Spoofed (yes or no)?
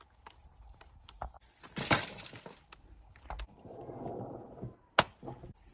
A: no